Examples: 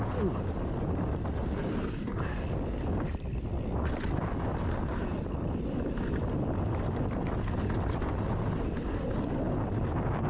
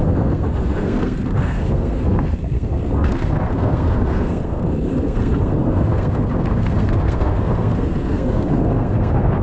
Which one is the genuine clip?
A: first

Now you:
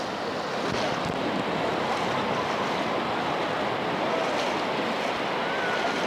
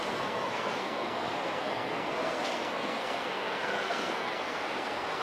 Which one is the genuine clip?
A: first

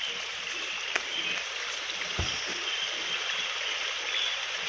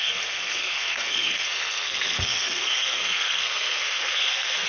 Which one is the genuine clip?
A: first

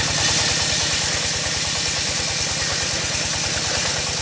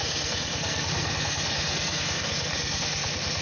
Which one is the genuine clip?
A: first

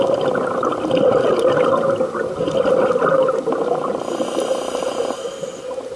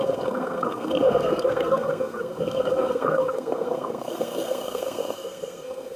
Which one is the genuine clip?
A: first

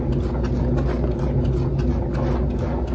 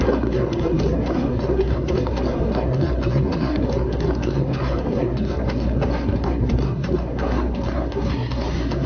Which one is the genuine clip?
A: first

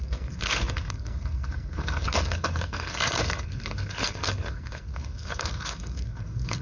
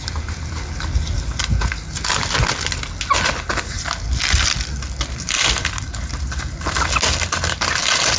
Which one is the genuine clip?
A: second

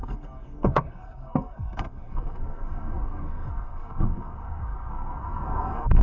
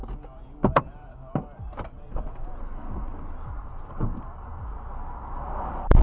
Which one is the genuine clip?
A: second